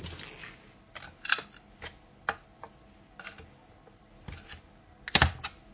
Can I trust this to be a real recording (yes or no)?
yes